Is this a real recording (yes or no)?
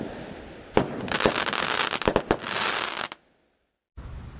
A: yes